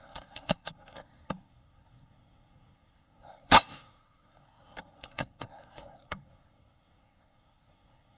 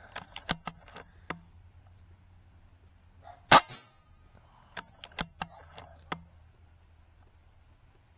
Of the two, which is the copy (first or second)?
first